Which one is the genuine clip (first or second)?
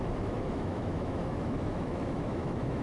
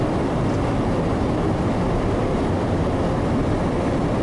second